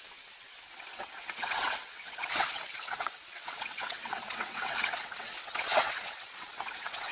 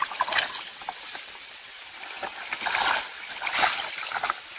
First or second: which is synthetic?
first